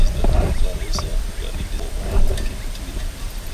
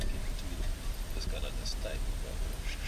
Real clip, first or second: second